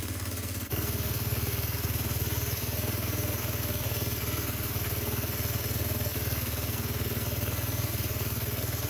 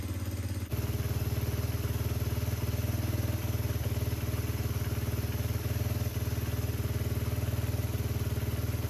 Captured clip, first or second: second